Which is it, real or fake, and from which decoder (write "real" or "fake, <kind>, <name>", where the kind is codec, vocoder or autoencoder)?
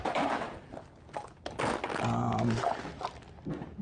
real